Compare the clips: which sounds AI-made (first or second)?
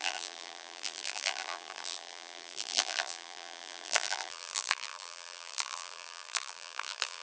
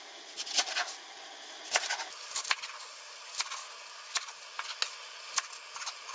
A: first